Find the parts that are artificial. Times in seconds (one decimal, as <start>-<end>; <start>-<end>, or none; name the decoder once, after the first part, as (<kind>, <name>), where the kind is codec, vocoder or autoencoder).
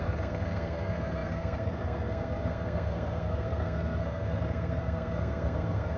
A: 0.0-6.0 (codec, SNAC)